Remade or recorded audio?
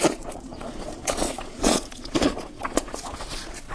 remade